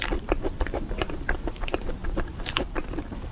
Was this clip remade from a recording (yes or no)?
yes